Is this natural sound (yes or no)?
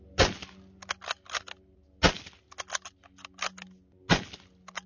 yes